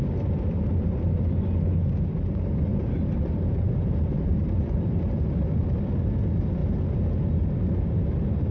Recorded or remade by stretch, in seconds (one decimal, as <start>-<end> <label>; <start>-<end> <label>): 0.0-2.7 recorded; 2.7-4.6 remade; 4.6-8.5 recorded